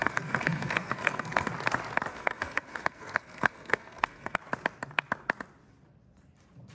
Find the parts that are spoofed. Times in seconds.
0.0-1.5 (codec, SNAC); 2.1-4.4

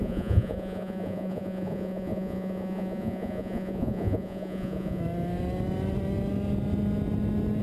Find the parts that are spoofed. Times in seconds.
0.0-5.0 (vocoder, Vocos)

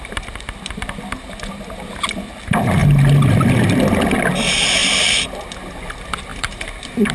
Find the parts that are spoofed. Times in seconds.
6.3-7.1 (vocoder, BigVGAN v2)

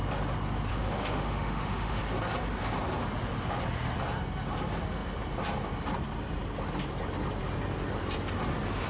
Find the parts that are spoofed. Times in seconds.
0.7-2.0 (autoencoder, DAC-VAE)

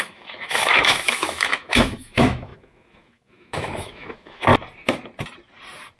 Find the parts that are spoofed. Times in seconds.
0.0-4.5 (autoencoder, DAC-VAE)

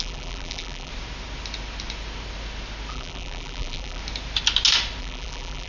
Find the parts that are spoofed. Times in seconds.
0.0-0.9 (vocoder, BigVGAN v2); 2.9-4.0; 5.0-5.7

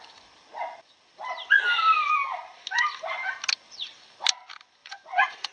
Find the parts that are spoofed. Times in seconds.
4.8-5.5 (vocoder, Vocos)

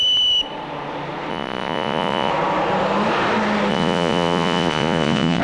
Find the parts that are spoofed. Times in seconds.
1.3-2.3 (vocoder, Vocos); 3.7-5.4